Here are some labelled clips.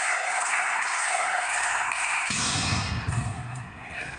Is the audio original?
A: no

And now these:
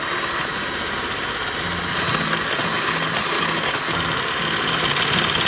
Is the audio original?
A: yes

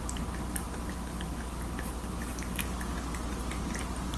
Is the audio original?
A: yes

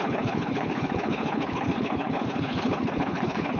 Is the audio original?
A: no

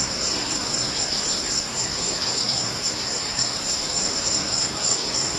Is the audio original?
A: no